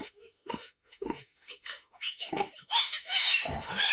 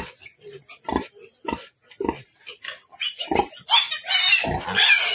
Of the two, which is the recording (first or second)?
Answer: second